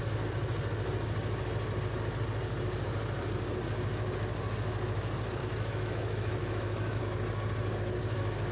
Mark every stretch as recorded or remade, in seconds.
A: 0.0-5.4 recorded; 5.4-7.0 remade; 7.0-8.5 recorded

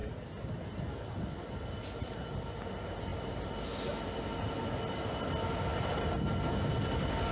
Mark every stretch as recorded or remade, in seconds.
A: 0.0-7.3 recorded

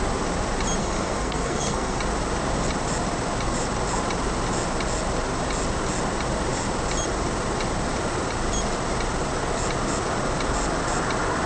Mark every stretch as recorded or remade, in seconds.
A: 0.0-0.8 recorded; 0.8-2.0 remade; 2.0-11.5 recorded

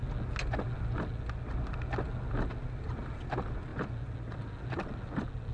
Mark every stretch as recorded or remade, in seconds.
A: 0.0-5.5 recorded